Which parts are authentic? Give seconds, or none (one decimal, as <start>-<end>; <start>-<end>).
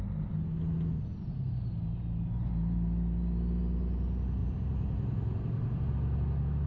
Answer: 0.0-4.4; 5.9-6.7